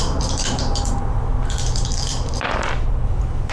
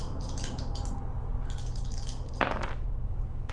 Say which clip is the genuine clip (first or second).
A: second